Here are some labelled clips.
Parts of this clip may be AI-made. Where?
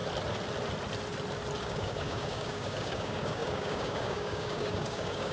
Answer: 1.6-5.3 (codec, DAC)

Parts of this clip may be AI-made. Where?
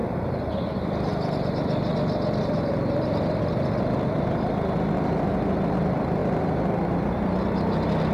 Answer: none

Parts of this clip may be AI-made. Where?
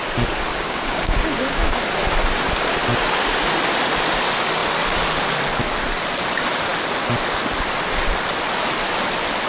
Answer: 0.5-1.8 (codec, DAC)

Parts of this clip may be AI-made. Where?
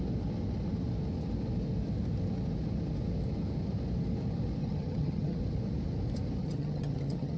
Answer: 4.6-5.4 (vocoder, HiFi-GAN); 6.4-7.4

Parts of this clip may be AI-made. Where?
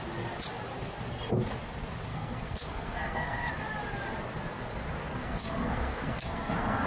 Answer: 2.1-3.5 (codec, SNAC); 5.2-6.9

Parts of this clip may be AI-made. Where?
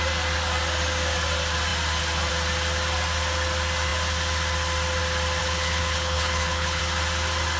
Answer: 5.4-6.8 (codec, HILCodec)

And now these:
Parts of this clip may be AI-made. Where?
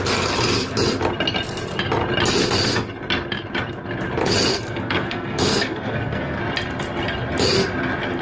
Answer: 4.5-6.4 (codec, SNAC)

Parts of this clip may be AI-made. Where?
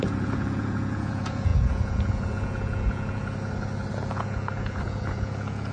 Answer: 0.0-3.2 (vocoder, Vocos); 3.9-5.7